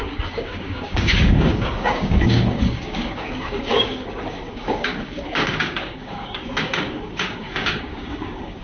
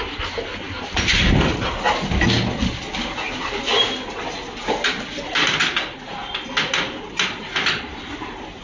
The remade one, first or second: first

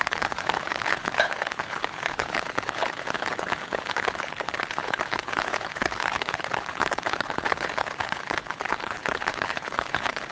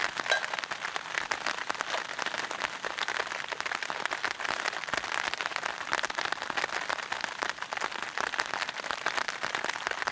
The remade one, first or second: first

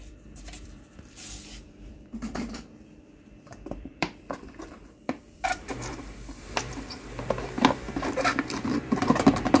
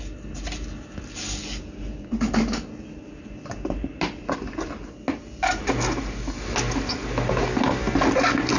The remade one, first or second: first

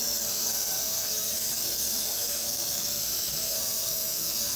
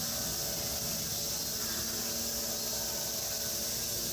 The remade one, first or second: first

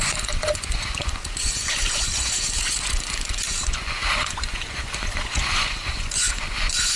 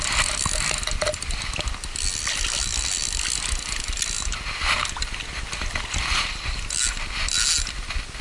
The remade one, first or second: first